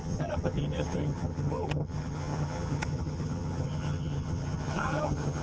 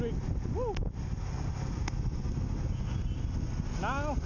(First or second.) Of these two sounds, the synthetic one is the first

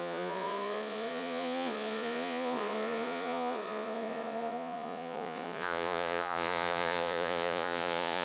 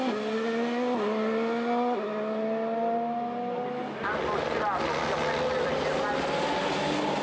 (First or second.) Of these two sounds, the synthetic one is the first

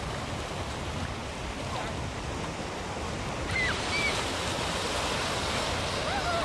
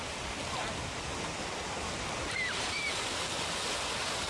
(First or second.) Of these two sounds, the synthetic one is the second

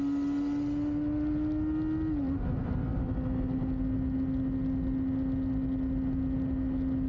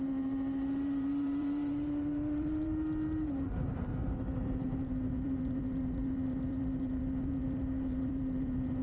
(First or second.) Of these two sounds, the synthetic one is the second